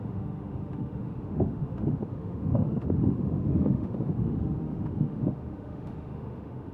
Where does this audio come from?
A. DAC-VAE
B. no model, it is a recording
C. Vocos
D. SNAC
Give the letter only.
A